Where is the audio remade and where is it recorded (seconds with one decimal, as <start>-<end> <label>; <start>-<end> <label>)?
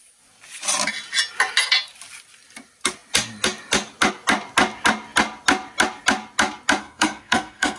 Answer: 0.0-6.8 recorded; 6.8-7.8 remade